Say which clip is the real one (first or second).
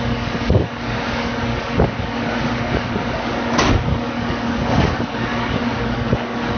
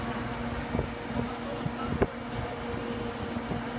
second